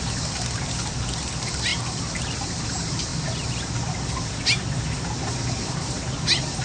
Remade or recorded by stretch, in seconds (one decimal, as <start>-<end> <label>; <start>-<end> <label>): 0.0-6.6 recorded